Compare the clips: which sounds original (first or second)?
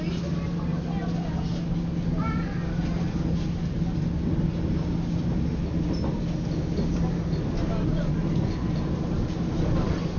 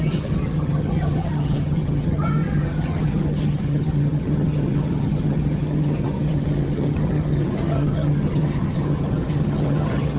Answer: first